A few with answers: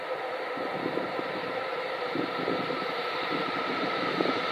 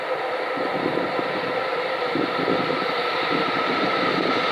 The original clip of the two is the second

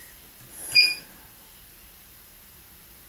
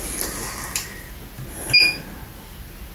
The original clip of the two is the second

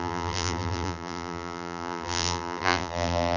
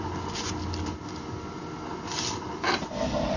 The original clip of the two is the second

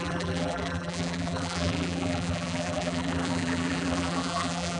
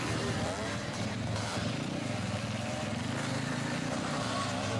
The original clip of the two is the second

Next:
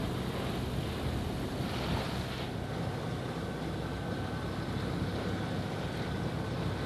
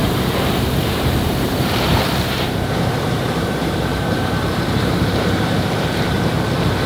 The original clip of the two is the first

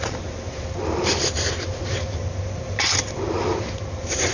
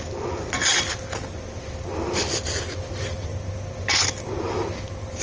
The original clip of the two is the second